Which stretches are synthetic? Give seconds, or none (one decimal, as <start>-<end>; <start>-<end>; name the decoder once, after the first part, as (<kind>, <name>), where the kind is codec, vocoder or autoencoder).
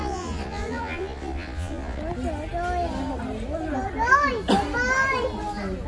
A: 0.0-2.0 (vocoder, Vocos)